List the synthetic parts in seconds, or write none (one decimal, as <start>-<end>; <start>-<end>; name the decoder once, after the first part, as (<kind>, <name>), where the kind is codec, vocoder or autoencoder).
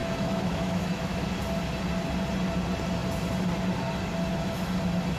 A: 0.0-1.2 (autoencoder, DAC-VAE)